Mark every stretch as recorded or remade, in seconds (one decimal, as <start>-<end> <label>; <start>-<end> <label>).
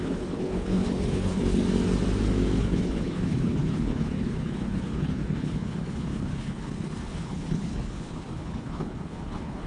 0.0-1.6 remade; 1.6-2.6 recorded; 2.6-9.7 remade